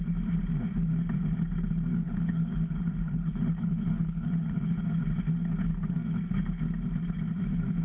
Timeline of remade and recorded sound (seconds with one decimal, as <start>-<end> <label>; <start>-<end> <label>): 0.0-1.9 recorded; 1.9-4.8 remade; 4.8-7.8 recorded